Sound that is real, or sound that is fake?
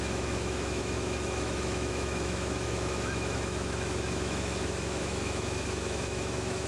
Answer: fake